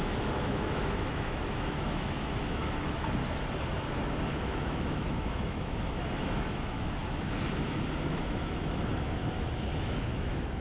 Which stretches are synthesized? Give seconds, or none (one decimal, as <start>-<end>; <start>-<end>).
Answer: 0.0-3.2; 4.2-7.0; 8.1-9.2; 9.8-10.6